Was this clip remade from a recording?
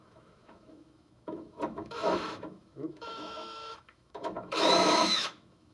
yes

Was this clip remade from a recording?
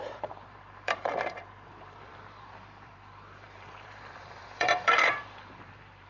yes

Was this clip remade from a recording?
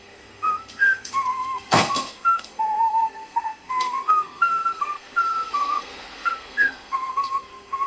yes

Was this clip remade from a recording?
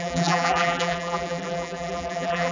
yes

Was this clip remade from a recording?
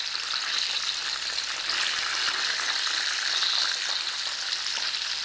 no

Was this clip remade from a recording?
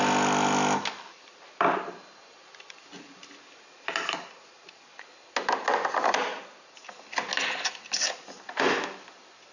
no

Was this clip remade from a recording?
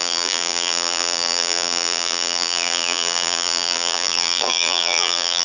yes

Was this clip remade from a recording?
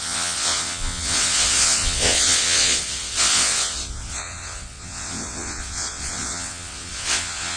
yes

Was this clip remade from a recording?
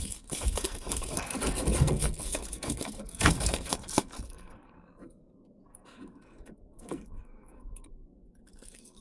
yes